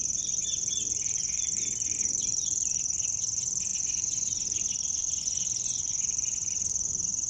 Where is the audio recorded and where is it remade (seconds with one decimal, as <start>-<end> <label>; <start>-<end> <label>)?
0.0-7.3 remade